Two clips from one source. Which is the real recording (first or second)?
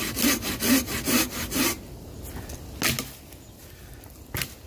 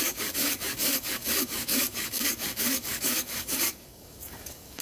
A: first